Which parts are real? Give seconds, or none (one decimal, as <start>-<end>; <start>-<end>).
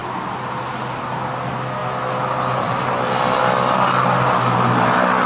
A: 0.0-5.3